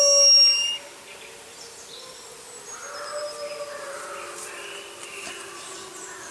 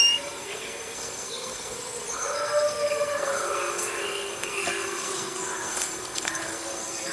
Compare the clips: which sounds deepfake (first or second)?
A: second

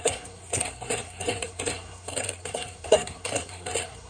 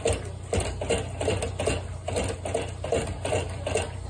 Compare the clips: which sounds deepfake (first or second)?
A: first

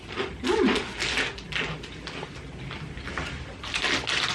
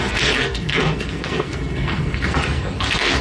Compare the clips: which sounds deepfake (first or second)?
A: second